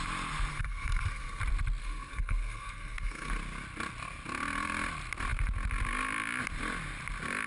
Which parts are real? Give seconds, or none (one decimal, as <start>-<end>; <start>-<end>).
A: 0.0-0.5; 1.4-1.8; 3.3-7.5